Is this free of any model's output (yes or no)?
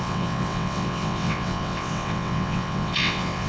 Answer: no